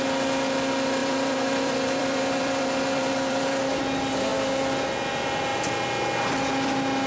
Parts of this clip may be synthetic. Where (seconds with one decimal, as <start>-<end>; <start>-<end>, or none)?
1.0-3.6